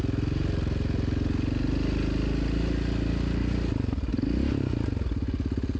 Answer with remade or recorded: recorded